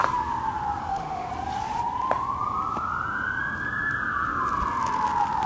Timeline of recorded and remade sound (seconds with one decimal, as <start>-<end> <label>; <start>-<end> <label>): 0.0-0.8 recorded; 0.8-1.3 remade; 1.3-5.5 recorded